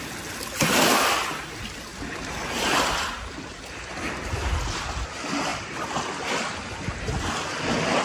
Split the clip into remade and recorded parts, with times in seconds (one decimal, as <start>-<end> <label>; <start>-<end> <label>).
0.0-5.5 recorded; 5.5-6.7 remade; 6.7-8.0 recorded